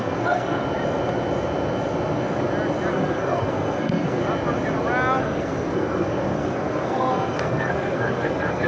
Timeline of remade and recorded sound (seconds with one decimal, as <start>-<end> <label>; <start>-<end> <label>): 0.0-0.6 remade; 0.6-2.9 recorded; 2.9-4.2 remade; 4.2-5.2 recorded; 5.2-8.7 remade